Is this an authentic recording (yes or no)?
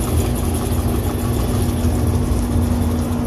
yes